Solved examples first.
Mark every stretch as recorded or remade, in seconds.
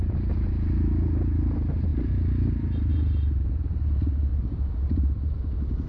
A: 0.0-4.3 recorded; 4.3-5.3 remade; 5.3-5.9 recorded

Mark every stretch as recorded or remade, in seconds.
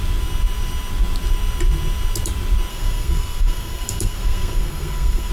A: 0.0-2.7 recorded; 2.7-5.3 remade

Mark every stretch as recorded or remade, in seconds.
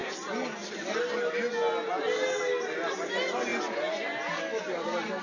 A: 0.0-5.2 recorded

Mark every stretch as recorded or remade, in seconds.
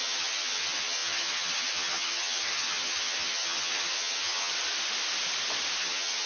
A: 0.0-4.5 remade; 4.5-5.8 recorded; 5.8-6.3 remade